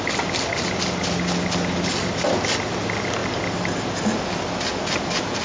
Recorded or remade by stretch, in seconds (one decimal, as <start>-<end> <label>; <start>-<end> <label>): 0.0-5.4 recorded